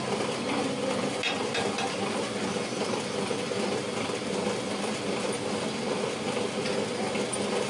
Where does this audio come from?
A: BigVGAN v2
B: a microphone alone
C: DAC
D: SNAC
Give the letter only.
B